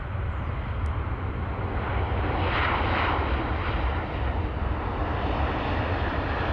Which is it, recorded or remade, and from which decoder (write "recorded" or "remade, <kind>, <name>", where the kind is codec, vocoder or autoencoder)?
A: recorded